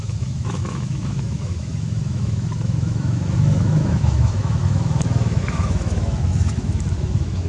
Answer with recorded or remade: remade